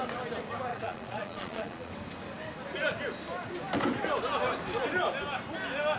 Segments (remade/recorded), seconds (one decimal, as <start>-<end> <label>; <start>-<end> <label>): 0.0-0.7 recorded; 0.7-1.9 remade; 1.9-6.0 recorded